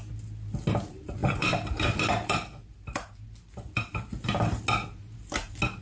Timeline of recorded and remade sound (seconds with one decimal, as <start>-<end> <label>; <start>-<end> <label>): 0.0-1.2 recorded; 1.2-4.2 remade; 4.2-5.8 recorded